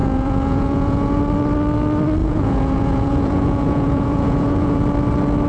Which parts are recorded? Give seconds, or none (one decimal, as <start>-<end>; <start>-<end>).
1.2-2.2; 4.8-5.5